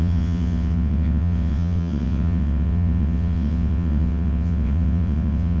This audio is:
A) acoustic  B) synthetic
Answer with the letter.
B